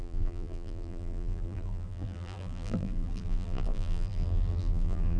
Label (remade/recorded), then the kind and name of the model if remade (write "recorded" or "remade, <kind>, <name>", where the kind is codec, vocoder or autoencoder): remade, vocoder, BigVGAN v2